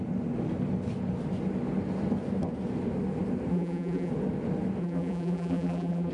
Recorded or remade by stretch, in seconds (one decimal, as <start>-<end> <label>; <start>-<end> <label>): 0.0-3.5 recorded; 3.5-4.1 remade; 4.1-4.8 recorded; 4.8-6.1 remade

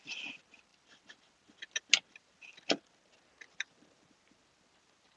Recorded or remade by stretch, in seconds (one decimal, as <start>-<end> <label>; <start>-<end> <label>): 0.0-5.2 recorded

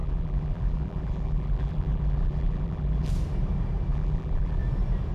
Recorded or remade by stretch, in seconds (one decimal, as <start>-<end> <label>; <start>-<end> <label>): 0.0-3.1 remade; 3.1-3.9 recorded; 3.9-4.6 remade; 4.6-5.1 recorded

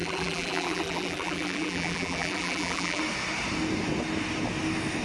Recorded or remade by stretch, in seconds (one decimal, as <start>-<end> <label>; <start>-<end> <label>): 0.0-3.0 remade; 3.0-5.0 recorded

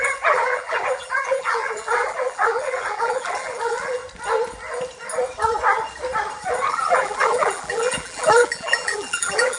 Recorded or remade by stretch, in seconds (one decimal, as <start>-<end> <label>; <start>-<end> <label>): 0.0-4.0 remade; 4.0-6.7 recorded; 6.7-9.6 remade

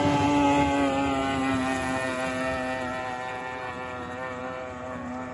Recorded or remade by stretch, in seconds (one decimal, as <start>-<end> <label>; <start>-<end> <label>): 0.0-5.3 recorded

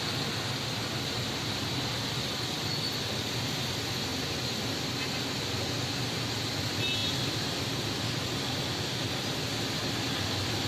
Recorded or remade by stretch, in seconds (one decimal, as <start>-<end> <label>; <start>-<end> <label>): 0.0-10.7 recorded